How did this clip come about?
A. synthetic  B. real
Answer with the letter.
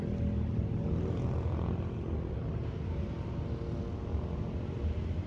B